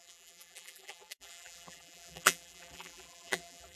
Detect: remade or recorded remade